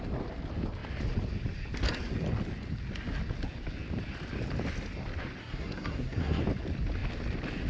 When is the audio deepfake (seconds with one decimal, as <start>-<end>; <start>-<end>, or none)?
5.4-6.4